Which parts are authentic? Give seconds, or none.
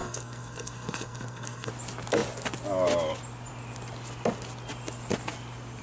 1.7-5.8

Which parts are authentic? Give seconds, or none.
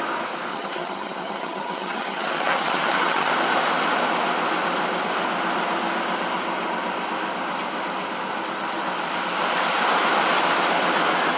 0.0-0.5; 3.3-11.4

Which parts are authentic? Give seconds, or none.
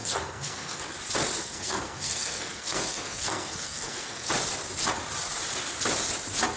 0.8-1.4; 4.3-6.6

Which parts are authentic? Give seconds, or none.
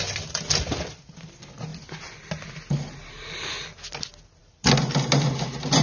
0.0-5.8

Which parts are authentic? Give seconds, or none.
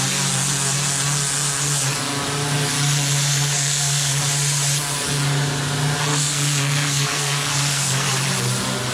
0.0-3.3; 4.2-6.1; 8.1-8.9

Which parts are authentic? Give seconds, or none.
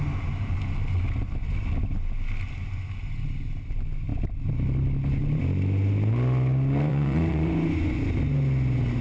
0.0-6.9; 8.0-9.0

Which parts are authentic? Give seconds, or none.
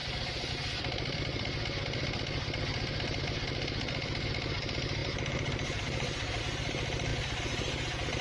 0.0-5.0; 6.4-8.2